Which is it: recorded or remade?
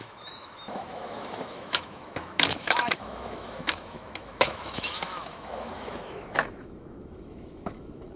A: remade